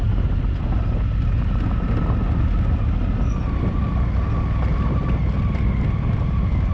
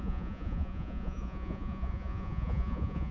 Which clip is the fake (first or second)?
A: second